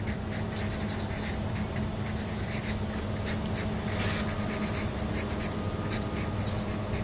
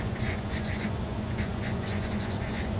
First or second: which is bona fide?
first